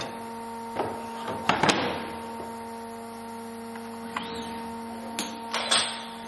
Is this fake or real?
real